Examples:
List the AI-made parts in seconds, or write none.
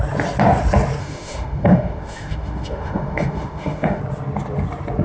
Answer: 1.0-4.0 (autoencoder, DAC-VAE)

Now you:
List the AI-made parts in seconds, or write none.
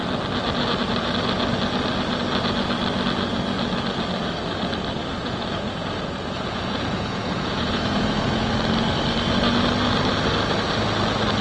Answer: 5.0-8.5 (vocoder, Vocos)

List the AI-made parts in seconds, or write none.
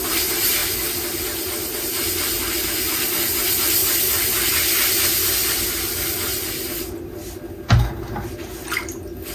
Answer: none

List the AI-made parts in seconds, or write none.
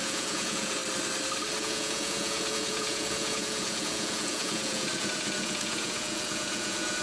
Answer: 0.0-0.8 (vocoder, Vocos); 1.6-7.0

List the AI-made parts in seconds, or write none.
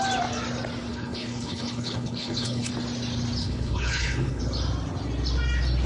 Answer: 0.9-2.7 (codec, HILCodec); 3.4-4.4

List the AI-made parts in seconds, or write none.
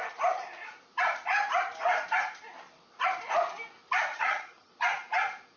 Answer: 4.1-4.7 (vocoder, HiFi-GAN)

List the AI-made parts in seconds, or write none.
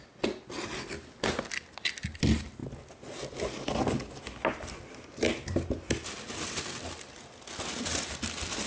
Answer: none